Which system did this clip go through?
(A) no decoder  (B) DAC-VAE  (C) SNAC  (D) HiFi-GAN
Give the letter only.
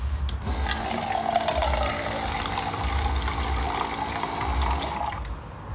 A